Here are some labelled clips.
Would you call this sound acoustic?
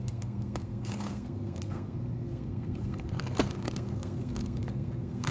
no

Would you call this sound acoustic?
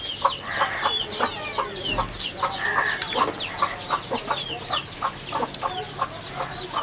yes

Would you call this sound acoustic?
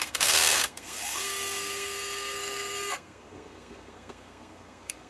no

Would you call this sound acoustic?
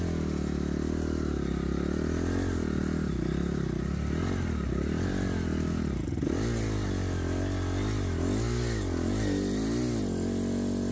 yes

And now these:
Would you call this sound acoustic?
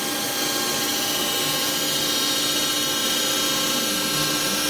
yes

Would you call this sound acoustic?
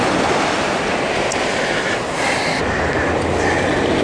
yes